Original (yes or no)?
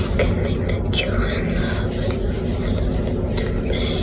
yes